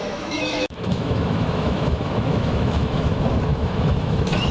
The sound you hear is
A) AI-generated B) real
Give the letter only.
A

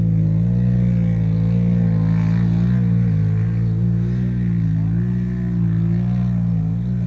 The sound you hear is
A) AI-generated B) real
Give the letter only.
B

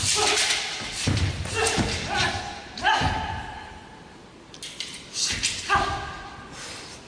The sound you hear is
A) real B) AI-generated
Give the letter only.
A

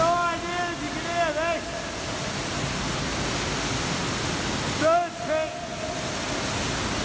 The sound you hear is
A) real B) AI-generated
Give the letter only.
A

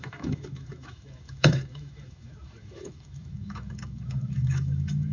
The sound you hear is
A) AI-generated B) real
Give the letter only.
A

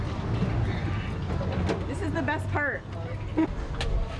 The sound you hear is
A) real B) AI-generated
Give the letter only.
A